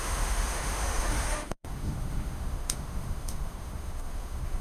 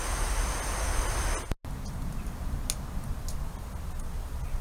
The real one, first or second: second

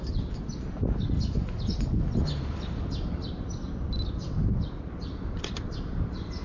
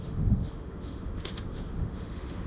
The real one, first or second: first